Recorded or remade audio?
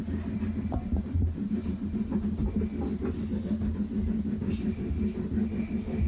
recorded